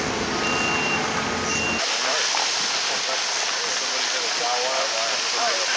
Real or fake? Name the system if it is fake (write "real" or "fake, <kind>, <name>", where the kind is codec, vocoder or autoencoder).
real